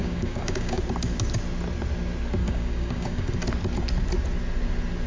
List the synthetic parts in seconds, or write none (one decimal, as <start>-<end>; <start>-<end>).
0.0-0.8; 2.4-3.3